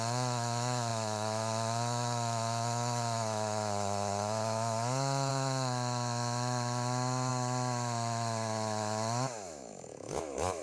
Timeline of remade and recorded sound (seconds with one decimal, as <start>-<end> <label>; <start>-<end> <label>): 0.0-10.6 remade